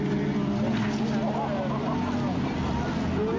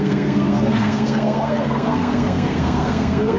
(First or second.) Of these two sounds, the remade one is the second